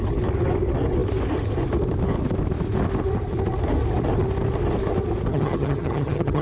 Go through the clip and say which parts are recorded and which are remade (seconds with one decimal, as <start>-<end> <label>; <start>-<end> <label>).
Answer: 0.0-5.3 recorded; 5.3-6.4 remade